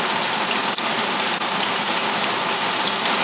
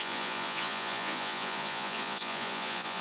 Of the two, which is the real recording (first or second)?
first